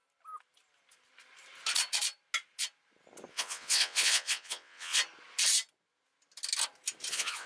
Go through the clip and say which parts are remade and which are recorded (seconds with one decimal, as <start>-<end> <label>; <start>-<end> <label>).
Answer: 0.0-3.3 recorded; 3.3-5.0 remade; 5.0-7.1 recorded; 7.1-7.5 remade